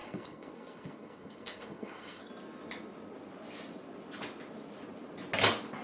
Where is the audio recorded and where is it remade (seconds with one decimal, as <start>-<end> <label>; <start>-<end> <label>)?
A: 0.0-2.3 remade; 2.3-5.8 recorded